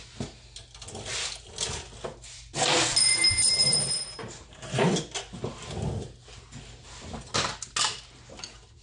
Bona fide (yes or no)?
yes